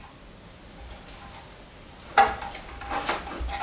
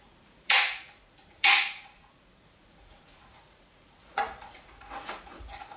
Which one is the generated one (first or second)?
second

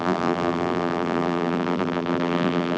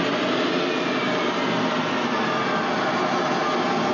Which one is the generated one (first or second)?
first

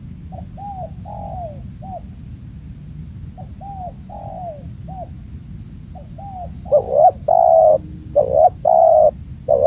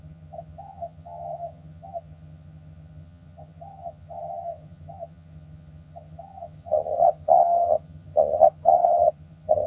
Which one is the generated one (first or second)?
second